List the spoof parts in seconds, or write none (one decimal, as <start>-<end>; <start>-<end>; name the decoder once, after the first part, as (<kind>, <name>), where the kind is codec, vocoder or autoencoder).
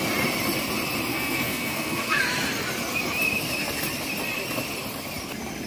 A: 1.1-2.2 (codec, SNAC)